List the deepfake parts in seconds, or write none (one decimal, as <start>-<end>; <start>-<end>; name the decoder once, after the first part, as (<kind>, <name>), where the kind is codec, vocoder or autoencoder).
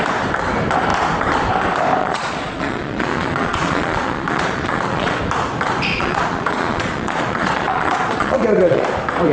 2.0-5.2 (vocoder, Vocos); 5.9-8.8